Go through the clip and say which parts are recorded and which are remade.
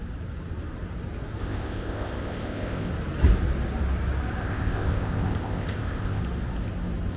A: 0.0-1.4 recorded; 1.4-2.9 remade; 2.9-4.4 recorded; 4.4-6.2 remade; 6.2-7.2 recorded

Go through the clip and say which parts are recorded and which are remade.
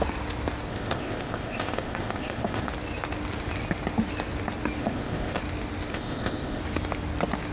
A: 0.0-0.7 recorded; 0.7-2.7 remade; 2.7-4.8 recorded; 4.8-5.4 remade; 5.4-5.9 recorded; 5.9-6.6 remade; 6.6-7.5 recorded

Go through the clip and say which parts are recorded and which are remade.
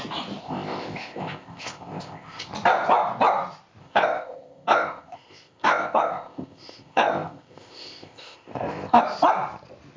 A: 0.0-0.4 recorded; 0.4-2.5 remade; 2.5-3.8 recorded; 3.8-9.0 remade; 9.0-10.0 recorded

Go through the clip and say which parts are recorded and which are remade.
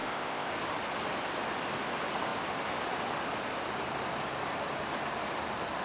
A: 0.0-0.5 remade; 0.5-5.8 recorded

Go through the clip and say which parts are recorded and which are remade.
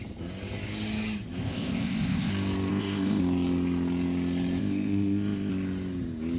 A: 0.0-1.4 recorded; 1.4-2.3 remade; 2.3-2.7 recorded; 2.7-3.2 remade; 3.2-4.6 recorded; 4.6-5.5 remade; 5.5-6.4 recorded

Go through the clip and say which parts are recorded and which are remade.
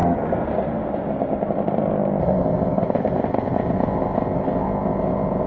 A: 0.0-2.2 recorded; 2.2-5.5 remade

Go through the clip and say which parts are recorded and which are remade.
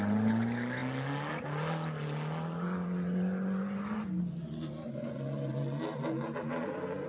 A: 0.0-7.1 recorded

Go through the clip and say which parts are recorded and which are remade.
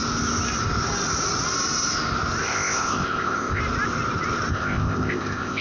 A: 0.0-2.4 recorded; 2.4-3.6 remade; 3.6-4.5 recorded; 4.5-5.6 remade